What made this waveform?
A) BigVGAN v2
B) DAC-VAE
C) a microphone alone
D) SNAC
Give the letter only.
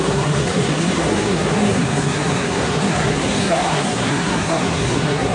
D